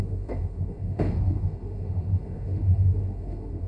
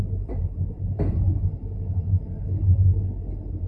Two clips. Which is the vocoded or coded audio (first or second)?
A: first